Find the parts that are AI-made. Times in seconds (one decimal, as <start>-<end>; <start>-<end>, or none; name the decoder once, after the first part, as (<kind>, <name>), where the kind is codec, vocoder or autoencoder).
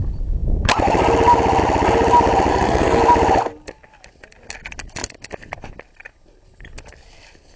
2.5-3.0 (codec, SNAC)